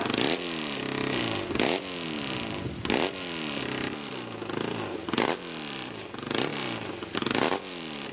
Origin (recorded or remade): recorded